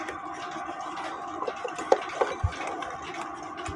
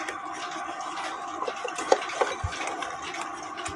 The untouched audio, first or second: first